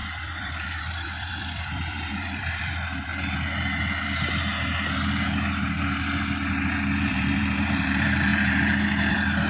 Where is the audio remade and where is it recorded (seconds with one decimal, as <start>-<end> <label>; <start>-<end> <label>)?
0.0-3.1 remade; 3.1-7.1 recorded; 7.1-8.3 remade; 8.3-9.1 recorded; 9.1-9.5 remade